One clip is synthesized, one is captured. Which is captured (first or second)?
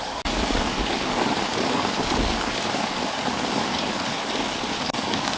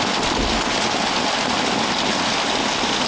second